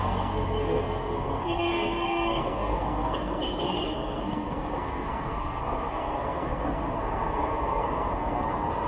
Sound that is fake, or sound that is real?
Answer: fake